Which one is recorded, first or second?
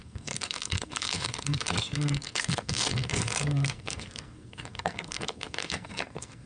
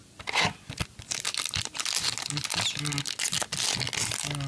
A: second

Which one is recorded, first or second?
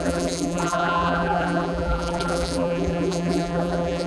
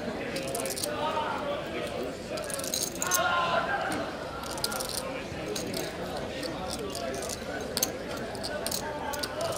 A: second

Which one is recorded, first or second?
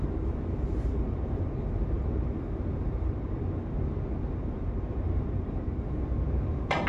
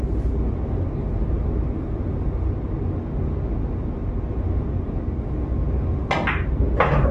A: second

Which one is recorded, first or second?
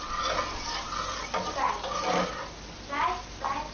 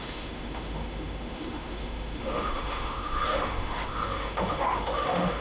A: first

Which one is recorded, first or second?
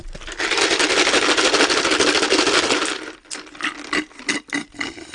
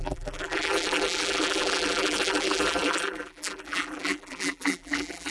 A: first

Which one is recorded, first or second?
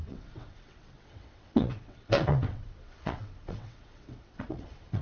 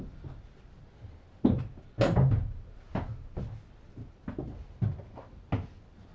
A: second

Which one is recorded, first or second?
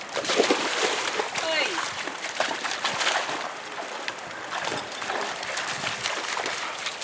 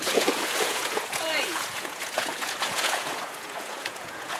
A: first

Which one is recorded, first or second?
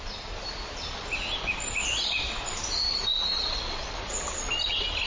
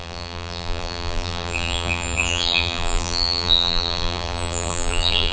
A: first